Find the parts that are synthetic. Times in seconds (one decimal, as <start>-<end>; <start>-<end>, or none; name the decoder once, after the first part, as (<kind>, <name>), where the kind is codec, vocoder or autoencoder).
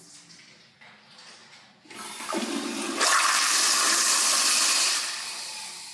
1.4-4.3 (vocoder, BigVGAN v2)